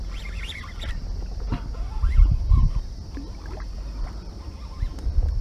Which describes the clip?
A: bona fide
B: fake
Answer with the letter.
A